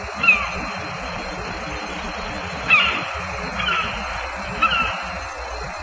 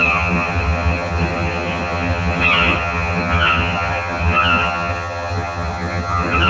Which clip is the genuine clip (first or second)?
first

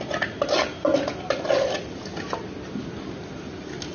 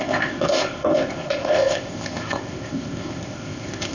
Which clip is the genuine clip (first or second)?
first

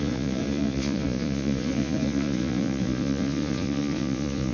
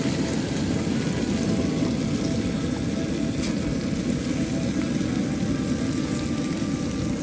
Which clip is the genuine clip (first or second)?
second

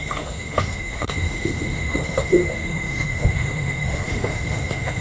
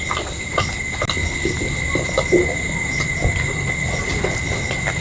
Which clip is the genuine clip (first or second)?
second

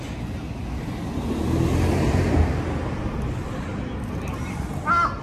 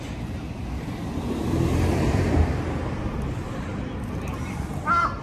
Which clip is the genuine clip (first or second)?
first